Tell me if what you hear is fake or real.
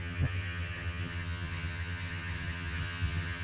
fake